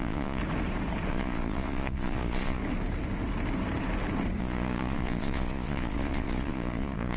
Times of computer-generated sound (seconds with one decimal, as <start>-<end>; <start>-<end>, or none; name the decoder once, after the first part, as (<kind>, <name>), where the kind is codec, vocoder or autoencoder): 0.0-0.4 (vocoder, Vocos); 1.1-2.6; 4.4-7.2